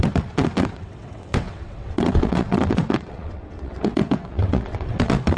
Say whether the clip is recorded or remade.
remade